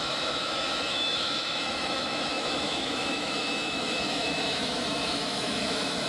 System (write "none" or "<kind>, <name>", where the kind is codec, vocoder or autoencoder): autoencoder, DAC-VAE